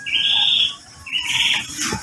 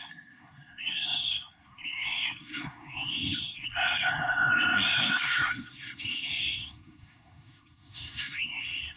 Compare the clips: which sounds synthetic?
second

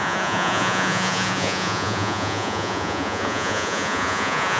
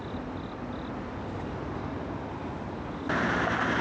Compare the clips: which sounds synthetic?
first